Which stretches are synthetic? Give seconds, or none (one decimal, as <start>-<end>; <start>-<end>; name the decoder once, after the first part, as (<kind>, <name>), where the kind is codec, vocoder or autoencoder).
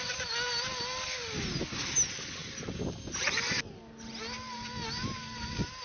none